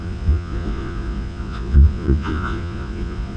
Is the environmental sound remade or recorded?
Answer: remade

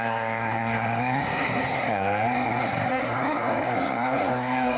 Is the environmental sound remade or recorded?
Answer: remade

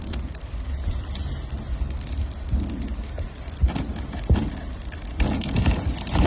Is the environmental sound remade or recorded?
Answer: recorded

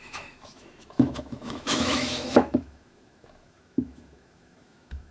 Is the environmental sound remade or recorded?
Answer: remade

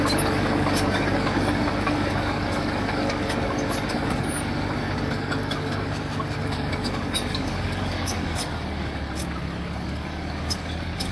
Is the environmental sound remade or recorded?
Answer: remade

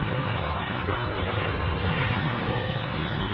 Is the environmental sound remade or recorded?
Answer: remade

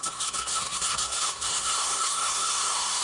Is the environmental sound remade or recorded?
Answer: remade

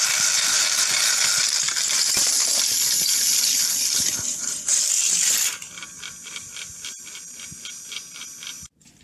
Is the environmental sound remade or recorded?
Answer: remade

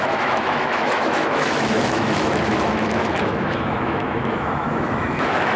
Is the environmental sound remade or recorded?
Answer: remade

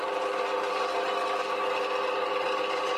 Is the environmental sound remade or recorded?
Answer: recorded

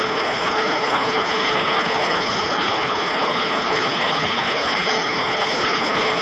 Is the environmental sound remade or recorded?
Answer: remade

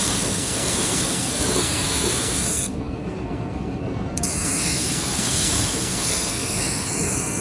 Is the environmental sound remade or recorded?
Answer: remade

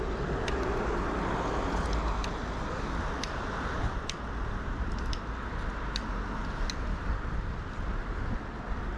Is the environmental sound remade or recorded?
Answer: recorded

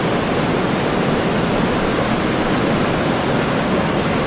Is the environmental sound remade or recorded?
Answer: recorded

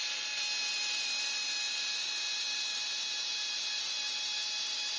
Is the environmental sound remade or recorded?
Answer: recorded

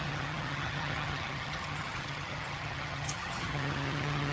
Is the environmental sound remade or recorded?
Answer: remade